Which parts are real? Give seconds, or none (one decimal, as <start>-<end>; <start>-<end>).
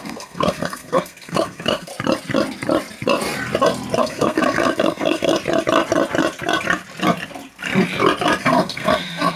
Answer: 1.9-4.0; 5.3-8.4